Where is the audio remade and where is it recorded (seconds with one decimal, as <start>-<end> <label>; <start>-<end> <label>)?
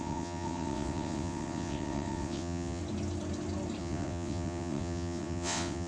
0.0-2.8 remade; 2.8-3.8 recorded; 3.8-5.9 remade